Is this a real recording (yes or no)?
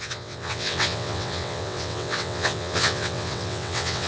no